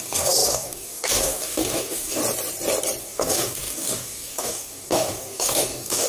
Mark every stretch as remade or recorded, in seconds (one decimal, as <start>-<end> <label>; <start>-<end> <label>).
0.0-2.2 remade; 2.2-3.0 recorded; 3.0-6.1 remade